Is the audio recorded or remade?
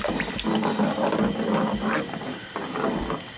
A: recorded